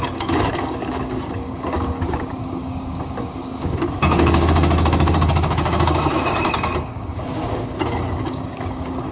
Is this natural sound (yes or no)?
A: no